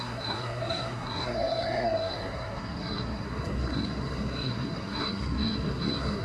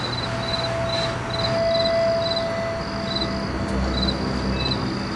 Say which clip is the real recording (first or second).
second